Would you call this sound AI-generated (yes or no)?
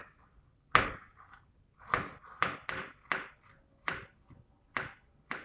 no